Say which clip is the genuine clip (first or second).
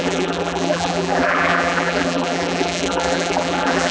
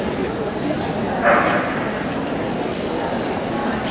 second